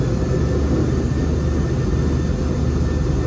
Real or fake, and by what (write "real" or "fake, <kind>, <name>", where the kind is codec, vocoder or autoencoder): real